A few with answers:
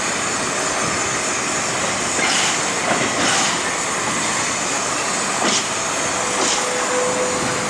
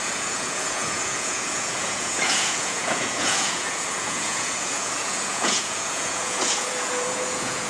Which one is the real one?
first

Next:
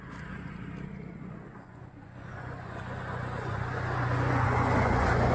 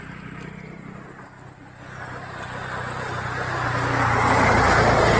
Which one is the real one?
second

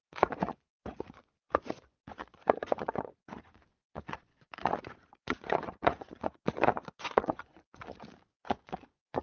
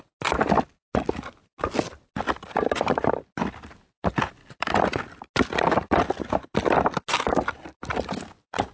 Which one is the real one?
second